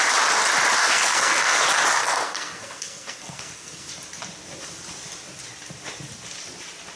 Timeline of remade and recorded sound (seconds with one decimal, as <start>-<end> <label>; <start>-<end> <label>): 0.0-0.8 recorded; 0.8-1.6 remade; 1.6-2.0 recorded; 2.0-3.9 remade; 3.9-7.0 recorded